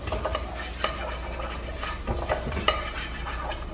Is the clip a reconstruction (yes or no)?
no